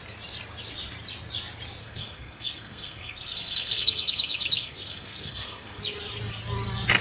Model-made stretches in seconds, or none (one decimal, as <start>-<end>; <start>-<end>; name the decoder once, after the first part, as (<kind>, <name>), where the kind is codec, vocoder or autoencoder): 1.8-5.8 (codec, SNAC)